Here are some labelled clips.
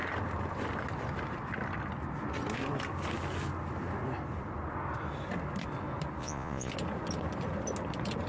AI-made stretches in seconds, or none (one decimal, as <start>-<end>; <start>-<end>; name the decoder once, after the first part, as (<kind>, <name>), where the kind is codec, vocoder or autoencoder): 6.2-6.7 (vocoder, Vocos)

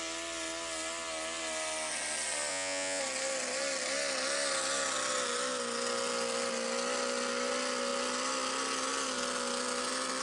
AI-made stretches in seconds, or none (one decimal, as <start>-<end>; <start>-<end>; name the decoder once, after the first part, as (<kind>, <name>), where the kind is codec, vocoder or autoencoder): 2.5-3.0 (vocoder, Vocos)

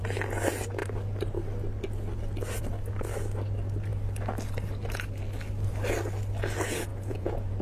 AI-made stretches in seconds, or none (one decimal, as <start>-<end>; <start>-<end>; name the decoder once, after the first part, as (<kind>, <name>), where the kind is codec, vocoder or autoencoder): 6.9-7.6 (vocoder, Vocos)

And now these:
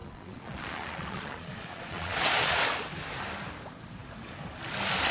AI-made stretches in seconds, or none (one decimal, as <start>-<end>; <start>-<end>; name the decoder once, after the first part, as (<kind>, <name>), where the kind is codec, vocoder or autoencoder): 0.0-2.6 (vocoder, Vocos)